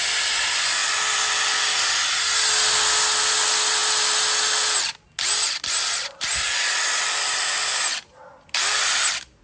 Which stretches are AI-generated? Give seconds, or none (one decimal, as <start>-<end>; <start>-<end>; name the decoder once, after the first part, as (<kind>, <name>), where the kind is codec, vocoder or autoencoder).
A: none